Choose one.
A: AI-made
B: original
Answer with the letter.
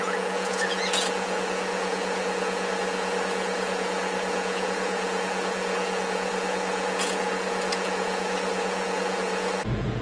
A